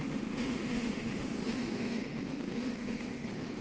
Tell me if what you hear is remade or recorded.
remade